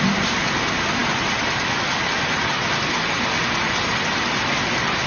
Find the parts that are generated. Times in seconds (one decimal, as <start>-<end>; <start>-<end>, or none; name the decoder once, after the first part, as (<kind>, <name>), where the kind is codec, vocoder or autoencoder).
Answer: none